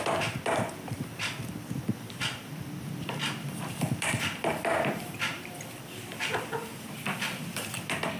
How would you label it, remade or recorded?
remade